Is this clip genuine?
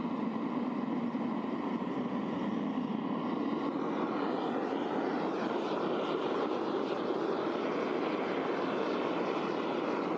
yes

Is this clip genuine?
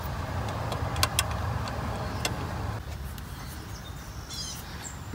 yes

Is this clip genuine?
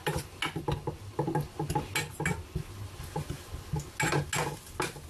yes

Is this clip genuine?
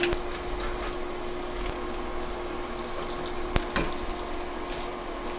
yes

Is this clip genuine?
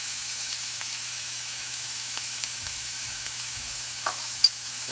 no